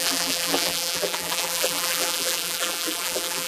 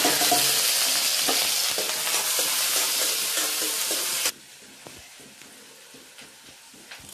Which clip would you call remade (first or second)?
first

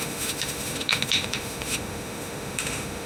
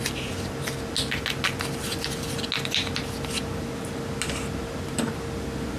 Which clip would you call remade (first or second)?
first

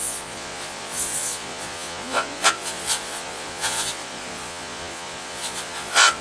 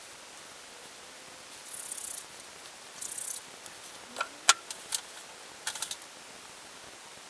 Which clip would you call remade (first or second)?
first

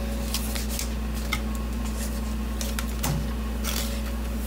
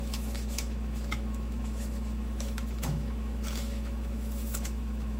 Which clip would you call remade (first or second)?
second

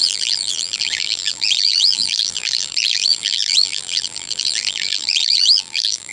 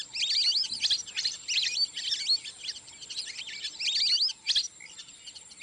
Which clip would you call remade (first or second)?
first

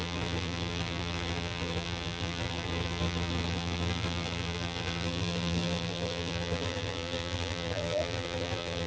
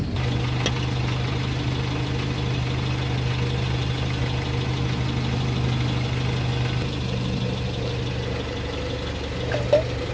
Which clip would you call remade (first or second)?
first